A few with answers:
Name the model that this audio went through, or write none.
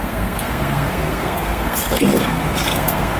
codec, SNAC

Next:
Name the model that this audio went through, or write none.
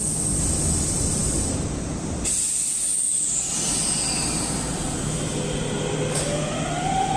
none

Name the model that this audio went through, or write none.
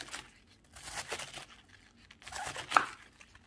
none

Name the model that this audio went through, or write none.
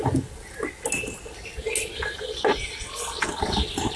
none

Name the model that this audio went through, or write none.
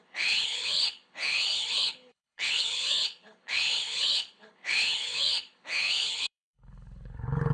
codec, HILCodec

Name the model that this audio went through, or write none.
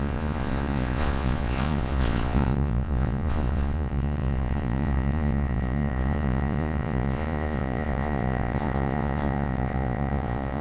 vocoder, Vocos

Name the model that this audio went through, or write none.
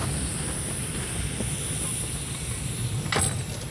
none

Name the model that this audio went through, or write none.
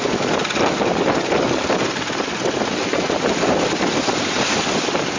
none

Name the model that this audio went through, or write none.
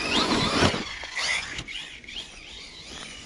vocoder, Vocos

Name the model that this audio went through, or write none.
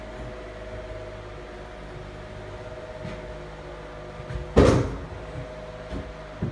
none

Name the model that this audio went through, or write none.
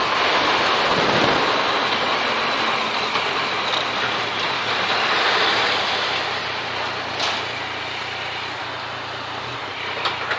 none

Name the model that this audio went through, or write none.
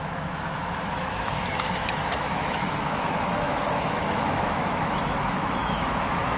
autoencoder, DAC-VAE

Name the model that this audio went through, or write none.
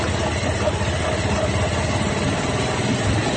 none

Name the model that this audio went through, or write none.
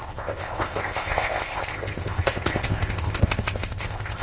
codec, ZipCodec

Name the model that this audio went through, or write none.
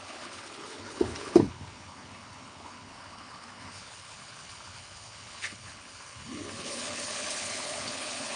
codec, HILCodec